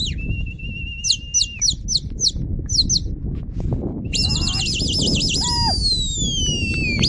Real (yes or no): yes